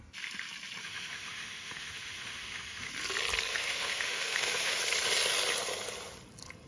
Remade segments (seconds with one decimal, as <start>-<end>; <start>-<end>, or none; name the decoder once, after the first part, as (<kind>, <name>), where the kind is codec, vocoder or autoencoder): 0.8-2.9 (autoencoder, DAC-VAE); 3.5-4.8